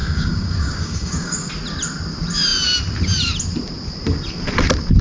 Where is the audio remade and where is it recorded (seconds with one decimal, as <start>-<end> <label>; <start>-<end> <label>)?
0.0-1.5 remade; 1.5-5.0 recorded